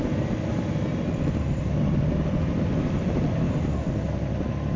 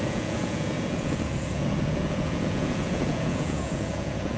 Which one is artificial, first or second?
second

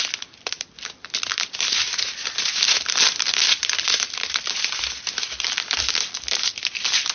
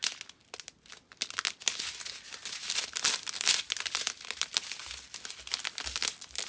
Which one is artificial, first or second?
first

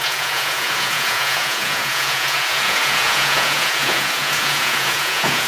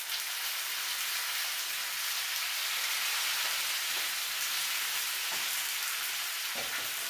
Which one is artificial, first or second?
first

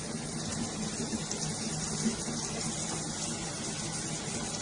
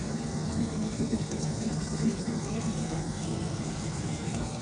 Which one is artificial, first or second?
second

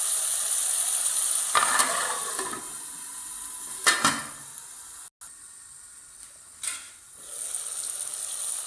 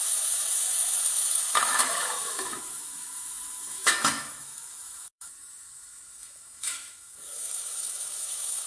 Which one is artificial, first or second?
second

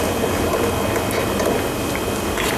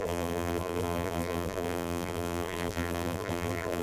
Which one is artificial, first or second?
second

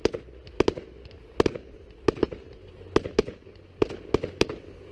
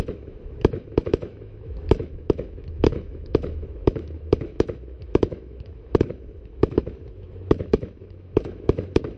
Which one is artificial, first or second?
second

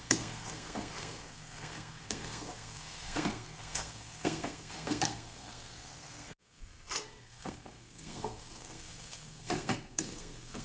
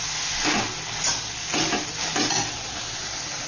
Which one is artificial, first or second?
first